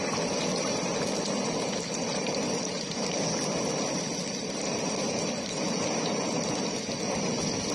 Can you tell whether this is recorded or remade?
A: recorded